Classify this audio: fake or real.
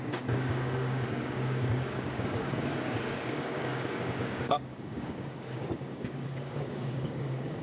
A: fake